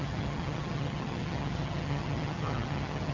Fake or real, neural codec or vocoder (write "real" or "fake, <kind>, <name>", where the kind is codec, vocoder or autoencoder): fake, vocoder, HiFi-GAN